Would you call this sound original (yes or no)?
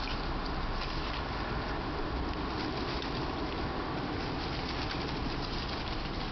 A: yes